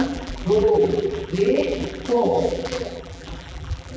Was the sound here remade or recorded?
remade